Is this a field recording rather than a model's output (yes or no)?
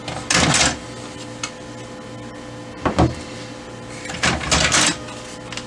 yes